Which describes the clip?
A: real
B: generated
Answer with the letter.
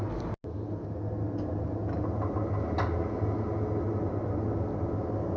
A